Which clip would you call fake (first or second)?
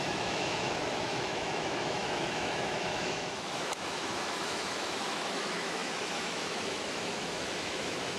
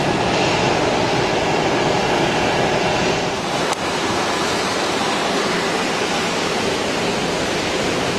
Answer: first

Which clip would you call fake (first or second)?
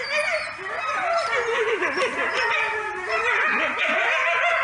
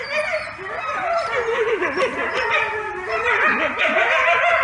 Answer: second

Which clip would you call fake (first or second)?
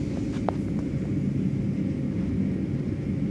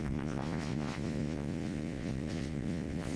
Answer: second